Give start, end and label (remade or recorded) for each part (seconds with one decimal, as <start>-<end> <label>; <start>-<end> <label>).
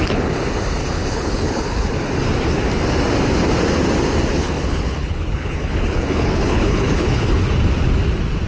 0.0-0.8 recorded; 0.8-1.9 remade; 1.9-4.3 recorded; 4.3-7.5 remade; 7.5-8.5 recorded